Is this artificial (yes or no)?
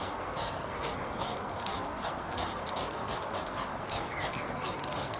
yes